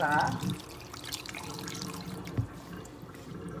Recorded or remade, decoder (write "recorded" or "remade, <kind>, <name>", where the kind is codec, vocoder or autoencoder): remade, vocoder, BigVGAN v2